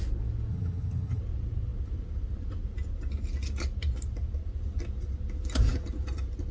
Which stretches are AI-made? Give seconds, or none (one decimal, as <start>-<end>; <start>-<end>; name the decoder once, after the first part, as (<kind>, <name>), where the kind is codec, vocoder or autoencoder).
0.5-1.2 (vocoder, HiFi-GAN)